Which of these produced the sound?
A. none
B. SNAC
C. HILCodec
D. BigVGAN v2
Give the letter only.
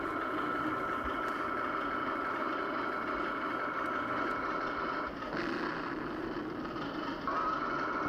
A